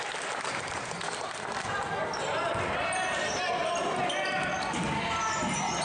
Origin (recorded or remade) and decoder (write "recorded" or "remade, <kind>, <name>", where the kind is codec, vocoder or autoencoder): recorded